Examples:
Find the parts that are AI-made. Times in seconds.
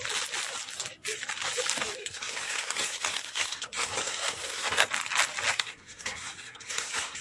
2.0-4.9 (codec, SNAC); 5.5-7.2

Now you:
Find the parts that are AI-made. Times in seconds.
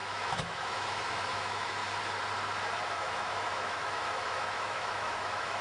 0.0-1.8 (autoencoder, DAC-VAE); 2.9-5.6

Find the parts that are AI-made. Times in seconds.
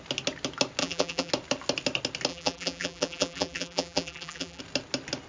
0.8-1.3 (vocoder, BigVGAN v2); 2.3-4.6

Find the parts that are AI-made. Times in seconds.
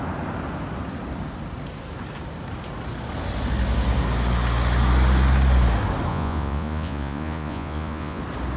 6.1-8.2 (vocoder, Vocos)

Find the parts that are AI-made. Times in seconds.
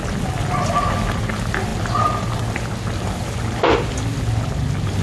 none